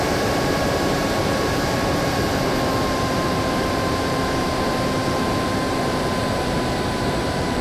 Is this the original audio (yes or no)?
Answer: no